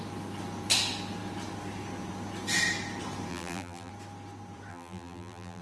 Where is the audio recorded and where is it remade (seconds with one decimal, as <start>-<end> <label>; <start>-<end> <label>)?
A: 0.0-3.3 recorded; 3.3-3.9 remade; 3.9-4.7 recorded; 4.7-5.6 remade